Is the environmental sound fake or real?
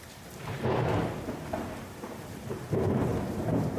fake